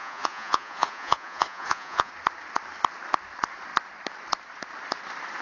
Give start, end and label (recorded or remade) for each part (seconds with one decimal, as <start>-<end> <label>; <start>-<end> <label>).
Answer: 0.0-2.1 remade; 2.1-5.4 recorded